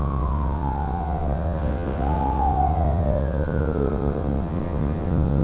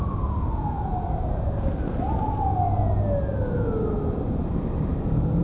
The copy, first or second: first